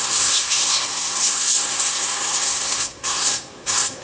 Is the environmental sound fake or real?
fake